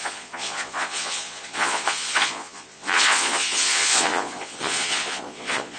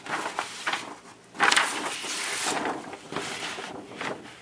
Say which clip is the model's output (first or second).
first